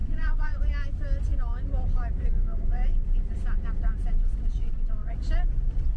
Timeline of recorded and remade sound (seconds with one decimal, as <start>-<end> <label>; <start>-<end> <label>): 0.0-0.6 remade; 0.6-4.6 recorded; 4.6-5.1 remade; 5.1-6.0 recorded